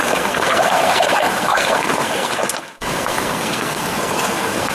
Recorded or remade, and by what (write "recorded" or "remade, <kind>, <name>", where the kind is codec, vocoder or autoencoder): remade, codec, SNAC